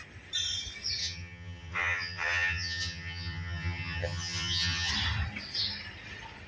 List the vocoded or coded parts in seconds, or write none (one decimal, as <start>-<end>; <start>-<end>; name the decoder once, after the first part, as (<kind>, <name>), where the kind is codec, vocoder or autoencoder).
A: 1.0-4.9 (vocoder, HiFi-GAN)